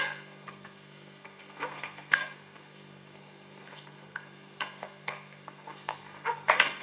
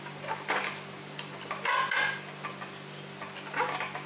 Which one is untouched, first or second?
second